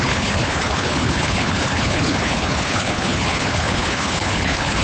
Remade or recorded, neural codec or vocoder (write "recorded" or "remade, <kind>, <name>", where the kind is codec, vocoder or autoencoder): remade, codec, HILCodec